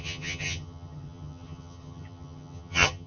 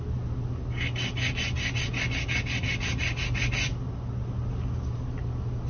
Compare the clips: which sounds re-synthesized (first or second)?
first